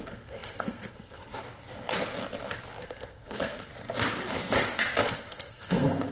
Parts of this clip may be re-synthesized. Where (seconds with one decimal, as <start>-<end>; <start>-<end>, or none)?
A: 0.0-1.3; 2.8-3.7; 5.1-6.1